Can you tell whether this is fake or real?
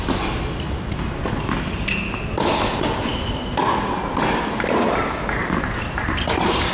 real